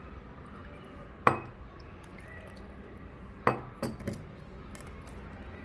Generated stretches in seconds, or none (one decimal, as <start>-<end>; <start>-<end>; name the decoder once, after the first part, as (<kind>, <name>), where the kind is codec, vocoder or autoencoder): none